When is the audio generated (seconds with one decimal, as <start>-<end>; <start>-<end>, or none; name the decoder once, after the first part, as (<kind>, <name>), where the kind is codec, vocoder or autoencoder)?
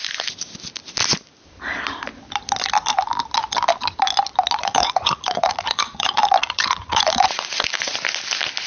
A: 4.6-7.9 (vocoder, Vocos)